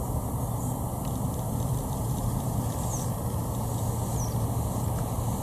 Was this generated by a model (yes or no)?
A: no